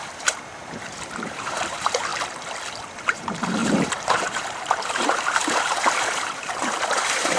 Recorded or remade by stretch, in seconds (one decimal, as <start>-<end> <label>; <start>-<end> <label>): 0.0-2.1 remade; 2.1-3.0 recorded; 3.0-7.4 remade